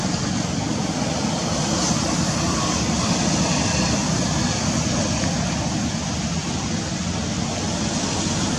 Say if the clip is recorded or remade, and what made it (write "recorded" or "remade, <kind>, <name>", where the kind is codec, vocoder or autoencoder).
recorded